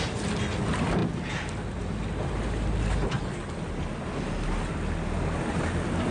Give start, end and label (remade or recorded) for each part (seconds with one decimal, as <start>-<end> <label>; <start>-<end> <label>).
0.0-6.1 recorded